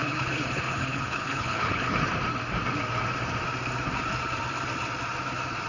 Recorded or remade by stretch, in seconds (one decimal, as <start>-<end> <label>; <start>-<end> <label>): 0.0-2.1 remade; 2.1-5.7 recorded